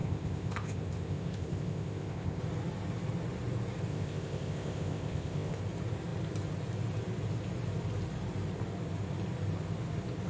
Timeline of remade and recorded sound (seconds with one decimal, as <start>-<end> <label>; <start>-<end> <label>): 0.0-2.4 remade; 2.4-3.9 recorded; 3.9-5.6 remade; 5.6-10.3 recorded